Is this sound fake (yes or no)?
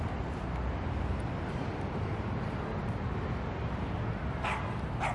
no